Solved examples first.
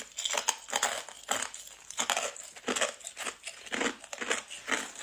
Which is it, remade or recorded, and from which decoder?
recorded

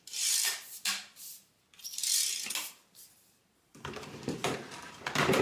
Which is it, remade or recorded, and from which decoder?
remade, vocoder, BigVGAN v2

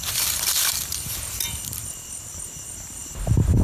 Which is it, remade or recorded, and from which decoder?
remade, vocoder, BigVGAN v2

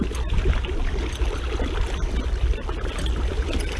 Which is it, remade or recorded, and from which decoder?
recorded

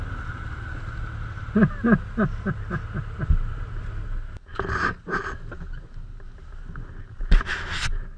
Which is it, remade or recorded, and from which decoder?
recorded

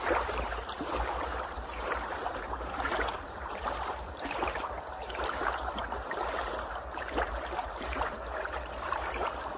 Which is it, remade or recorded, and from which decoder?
remade, vocoder, BigVGAN v2